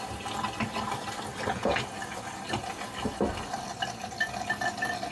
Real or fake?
real